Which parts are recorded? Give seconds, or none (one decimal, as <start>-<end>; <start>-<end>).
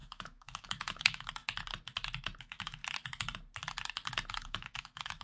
1.4-2.4; 2.8-4.3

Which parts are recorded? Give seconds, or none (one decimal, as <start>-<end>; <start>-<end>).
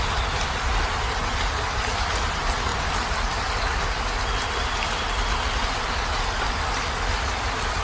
0.0-7.8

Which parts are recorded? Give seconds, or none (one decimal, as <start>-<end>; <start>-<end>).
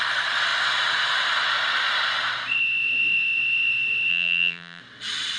0.0-4.1; 4.8-5.4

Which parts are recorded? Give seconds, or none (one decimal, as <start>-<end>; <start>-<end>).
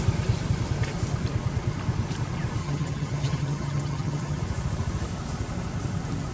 0.0-2.6; 4.4-6.3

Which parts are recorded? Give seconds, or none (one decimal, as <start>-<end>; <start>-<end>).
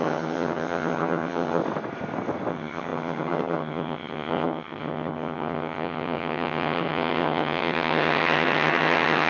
1.6-2.5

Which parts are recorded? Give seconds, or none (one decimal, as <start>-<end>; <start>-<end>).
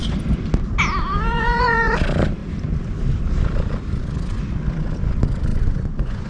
0.0-1.3; 1.9-5.5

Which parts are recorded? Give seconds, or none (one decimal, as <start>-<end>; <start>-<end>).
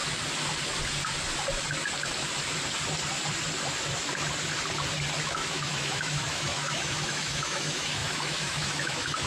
0.0-5.2